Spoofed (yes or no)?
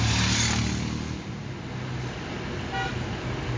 no